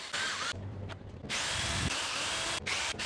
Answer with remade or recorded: remade